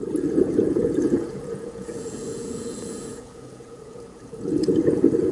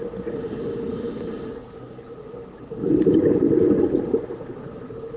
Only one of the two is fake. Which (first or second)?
first